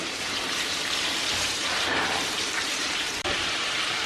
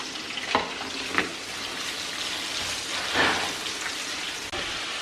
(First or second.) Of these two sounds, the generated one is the first